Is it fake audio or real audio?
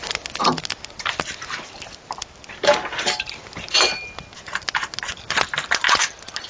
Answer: real